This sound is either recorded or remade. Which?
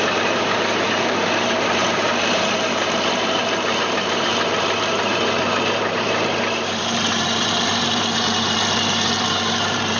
remade